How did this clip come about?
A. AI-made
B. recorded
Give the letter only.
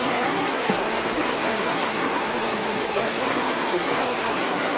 A